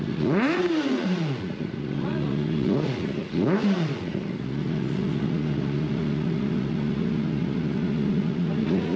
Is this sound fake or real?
fake